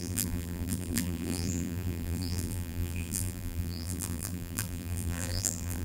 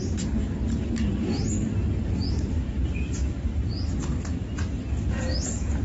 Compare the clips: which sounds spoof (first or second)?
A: first